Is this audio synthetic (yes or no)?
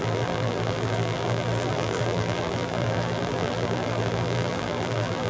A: yes